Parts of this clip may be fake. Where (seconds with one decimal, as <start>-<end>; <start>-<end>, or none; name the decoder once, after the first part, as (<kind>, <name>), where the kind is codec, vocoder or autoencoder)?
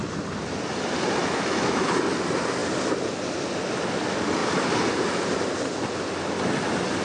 1.2-1.9 (autoencoder, DAC-VAE)